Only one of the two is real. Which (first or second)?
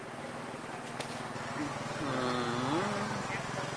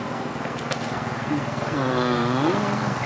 first